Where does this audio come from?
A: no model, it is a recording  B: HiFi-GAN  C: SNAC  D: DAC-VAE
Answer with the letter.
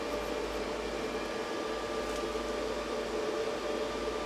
A